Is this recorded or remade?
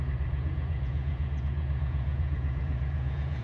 remade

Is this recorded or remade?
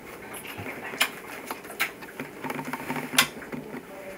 recorded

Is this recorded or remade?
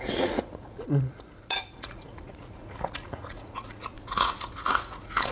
remade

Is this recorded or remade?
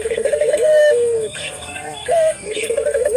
remade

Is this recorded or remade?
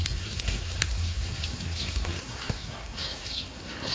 remade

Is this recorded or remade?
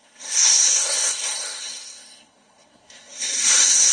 remade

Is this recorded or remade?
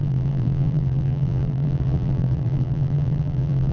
remade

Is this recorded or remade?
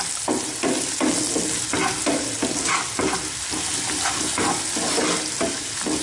recorded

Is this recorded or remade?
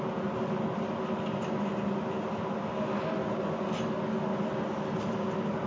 recorded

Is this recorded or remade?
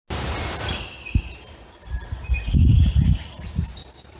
recorded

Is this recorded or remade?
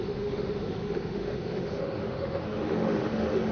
remade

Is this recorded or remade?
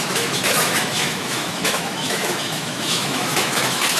remade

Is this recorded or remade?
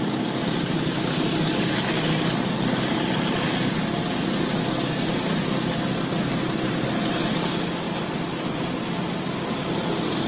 recorded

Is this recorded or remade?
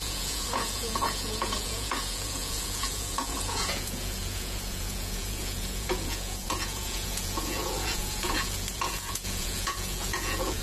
remade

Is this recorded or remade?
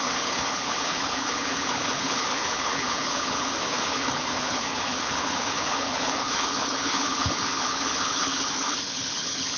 remade